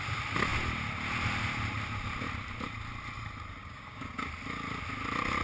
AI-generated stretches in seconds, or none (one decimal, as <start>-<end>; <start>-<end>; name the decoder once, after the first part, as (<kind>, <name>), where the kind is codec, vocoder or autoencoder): 3.6-4.3 (codec, DAC)